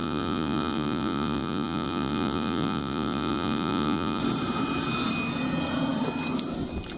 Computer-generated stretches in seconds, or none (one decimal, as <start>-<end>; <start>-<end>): 0.0-4.2